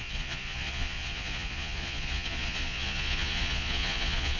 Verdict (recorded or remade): remade